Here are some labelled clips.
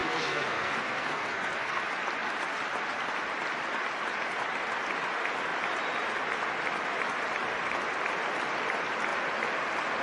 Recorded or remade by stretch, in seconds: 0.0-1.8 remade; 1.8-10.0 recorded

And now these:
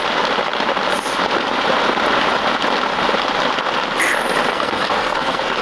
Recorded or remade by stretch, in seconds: 0.0-4.5 recorded; 4.5-5.6 remade

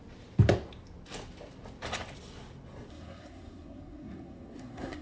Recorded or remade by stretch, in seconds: 0.0-2.9 recorded; 2.9-5.0 remade

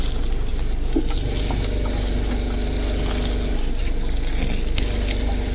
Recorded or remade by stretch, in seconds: 0.0-5.5 recorded

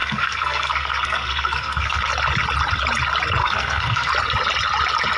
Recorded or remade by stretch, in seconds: 0.0-2.0 remade; 2.0-3.4 recorded; 3.4-4.1 remade; 4.1-5.2 recorded

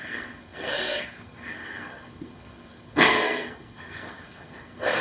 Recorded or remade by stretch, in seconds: 0.0-5.0 remade